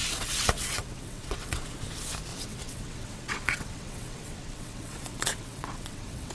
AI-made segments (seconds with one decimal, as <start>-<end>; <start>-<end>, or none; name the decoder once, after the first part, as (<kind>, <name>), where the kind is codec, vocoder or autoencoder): 0.0-1.6 (vocoder, WaveNeXt); 2.3-6.3